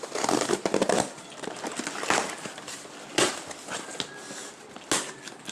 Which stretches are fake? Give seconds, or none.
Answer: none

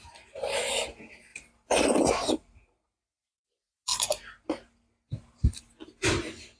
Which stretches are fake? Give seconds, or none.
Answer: none

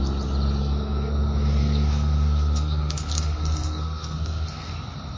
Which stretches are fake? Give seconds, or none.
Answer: 0.6-1.1 (codec, SNAC); 1.6-4.7